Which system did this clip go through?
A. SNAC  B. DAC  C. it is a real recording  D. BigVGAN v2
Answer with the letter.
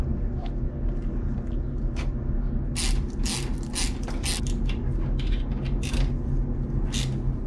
C